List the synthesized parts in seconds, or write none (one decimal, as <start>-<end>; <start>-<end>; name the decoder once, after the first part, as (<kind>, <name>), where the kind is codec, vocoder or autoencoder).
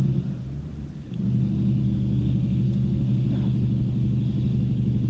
1.8-3.3 (codec, SNAC)